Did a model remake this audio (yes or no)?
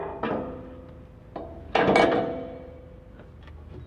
no